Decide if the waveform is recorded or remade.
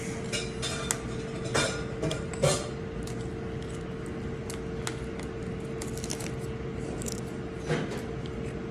recorded